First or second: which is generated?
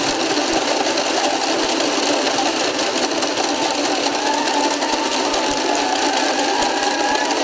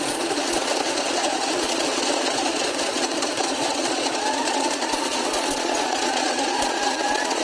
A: second